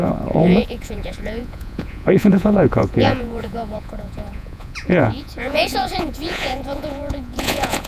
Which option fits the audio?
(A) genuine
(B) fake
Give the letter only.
B